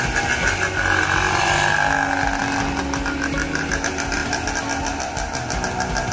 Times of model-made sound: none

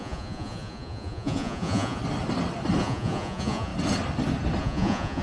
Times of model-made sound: 0.0-2.0 (vocoder, Vocos); 2.8-3.7; 4.6-5.2

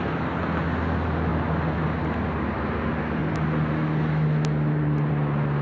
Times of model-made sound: none